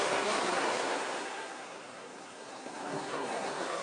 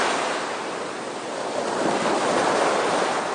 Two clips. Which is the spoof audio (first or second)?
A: first